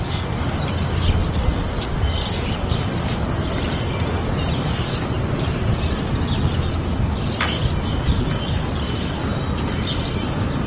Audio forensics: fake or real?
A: real